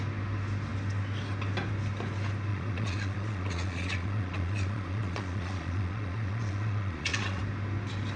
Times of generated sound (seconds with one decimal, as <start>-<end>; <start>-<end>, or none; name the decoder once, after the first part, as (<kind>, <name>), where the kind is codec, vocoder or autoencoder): 2.5-7.4 (vocoder, Vocos)